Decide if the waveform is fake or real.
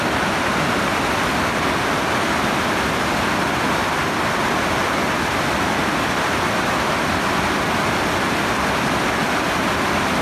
real